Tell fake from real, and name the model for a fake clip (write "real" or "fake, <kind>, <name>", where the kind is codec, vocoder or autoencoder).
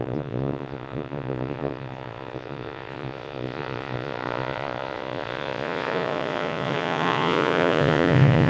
fake, vocoder, Vocos